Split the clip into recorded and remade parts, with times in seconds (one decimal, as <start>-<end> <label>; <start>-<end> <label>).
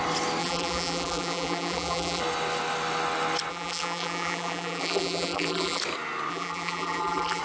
0.0-0.4 recorded; 0.4-2.2 remade; 2.2-3.5 recorded; 3.5-5.8 remade; 5.8-6.3 recorded; 6.3-7.4 remade